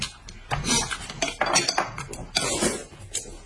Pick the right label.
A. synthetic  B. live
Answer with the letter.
B